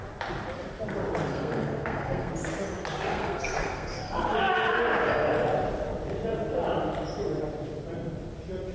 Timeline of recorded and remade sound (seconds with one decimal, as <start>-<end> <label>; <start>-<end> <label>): 0.0-1.3 recorded; 1.3-2.3 remade; 2.3-3.1 recorded; 3.1-4.8 remade; 4.8-8.7 recorded